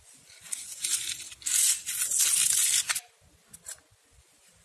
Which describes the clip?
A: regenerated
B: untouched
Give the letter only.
B